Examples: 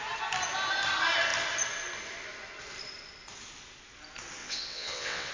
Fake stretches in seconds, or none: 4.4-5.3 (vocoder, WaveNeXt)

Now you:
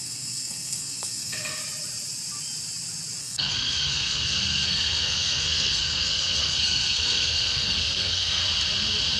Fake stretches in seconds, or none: 0.0-1.6 (codec, SNAC); 3.2-8.4

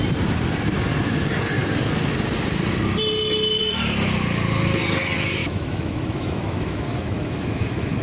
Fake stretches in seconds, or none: 5.4-8.0 (autoencoder, DAC-VAE)

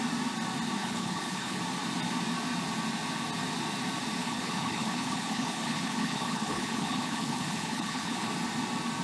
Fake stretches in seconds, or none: 0.8-1.6 (codec, HILCodec); 4.2-8.3

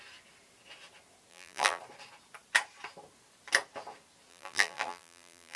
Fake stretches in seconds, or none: 1.3-1.8 (vocoder, BigVGAN v2); 4.3-5.6

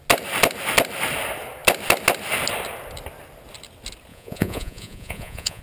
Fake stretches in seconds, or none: 4.1-5.6 (vocoder, Vocos)